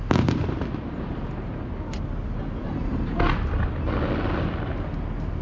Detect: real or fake real